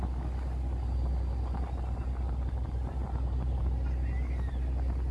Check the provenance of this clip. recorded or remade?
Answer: recorded